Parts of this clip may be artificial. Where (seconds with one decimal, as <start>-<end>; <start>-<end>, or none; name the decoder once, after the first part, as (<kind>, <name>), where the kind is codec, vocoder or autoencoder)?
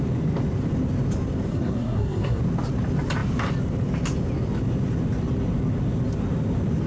1.5-2.4 (codec, SNAC)